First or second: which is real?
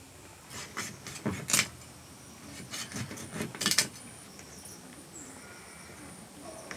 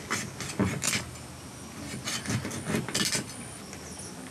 second